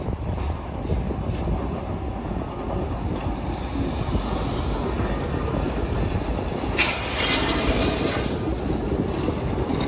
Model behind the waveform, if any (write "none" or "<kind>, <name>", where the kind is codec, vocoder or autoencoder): none